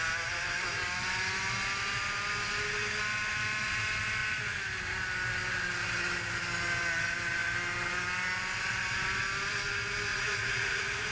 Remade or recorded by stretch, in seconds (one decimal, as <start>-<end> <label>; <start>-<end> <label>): 0.0-10.1 recorded; 10.1-11.1 remade